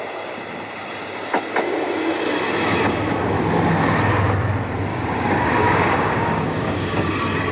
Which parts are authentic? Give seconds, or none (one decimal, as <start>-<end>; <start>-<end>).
0.0-4.9; 7.1-7.5